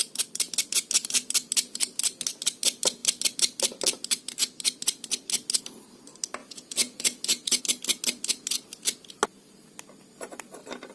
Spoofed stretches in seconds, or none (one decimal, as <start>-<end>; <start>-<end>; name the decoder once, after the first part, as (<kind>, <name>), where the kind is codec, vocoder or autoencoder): 6.4-7.6 (vocoder, Vocos)